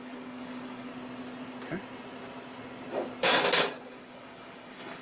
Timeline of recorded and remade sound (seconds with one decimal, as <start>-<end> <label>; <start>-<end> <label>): 0.0-0.9 remade; 0.9-3.9 recorded; 3.9-5.0 remade